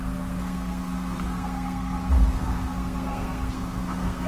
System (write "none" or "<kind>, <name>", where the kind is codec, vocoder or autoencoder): codec, SNAC